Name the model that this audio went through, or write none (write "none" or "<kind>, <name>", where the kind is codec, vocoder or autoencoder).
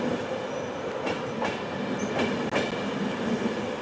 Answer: none